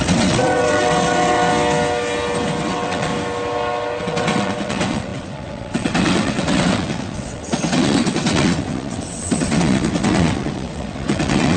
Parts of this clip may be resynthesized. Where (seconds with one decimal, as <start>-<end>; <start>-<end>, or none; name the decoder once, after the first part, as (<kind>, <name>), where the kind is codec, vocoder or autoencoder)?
0.0-1.5 (vocoder, WaveNeXt); 2.6-3.1; 4.0-11.6